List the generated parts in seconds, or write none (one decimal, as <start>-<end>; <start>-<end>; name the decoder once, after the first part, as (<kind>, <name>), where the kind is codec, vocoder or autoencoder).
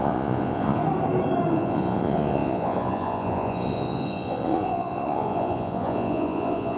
0.0-0.8 (vocoder, Vocos); 1.5-6.8